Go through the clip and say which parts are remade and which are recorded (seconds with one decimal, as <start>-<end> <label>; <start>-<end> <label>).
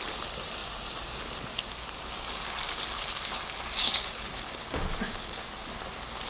0.0-3.8 recorded; 3.8-5.5 remade; 5.5-6.3 recorded